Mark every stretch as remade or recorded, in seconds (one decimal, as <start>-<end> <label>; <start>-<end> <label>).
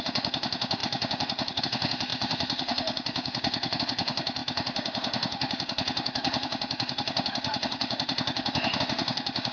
0.0-9.5 remade